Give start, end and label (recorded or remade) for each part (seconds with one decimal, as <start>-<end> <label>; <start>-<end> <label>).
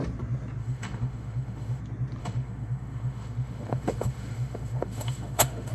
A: 0.0-0.6 recorded; 0.6-1.8 remade; 1.8-2.2 recorded; 2.2-5.7 remade